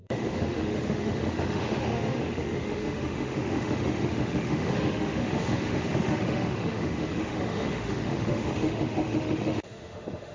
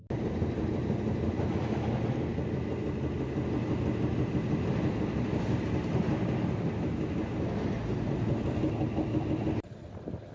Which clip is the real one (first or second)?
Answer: second